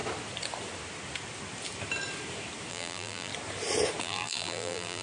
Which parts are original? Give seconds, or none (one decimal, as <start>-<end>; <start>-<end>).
0.0-2.7; 3.3-4.0